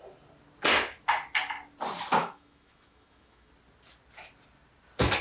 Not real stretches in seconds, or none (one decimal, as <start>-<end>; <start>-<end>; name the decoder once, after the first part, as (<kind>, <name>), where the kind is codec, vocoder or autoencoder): 2.2-3.5 (autoencoder, DAC-VAE)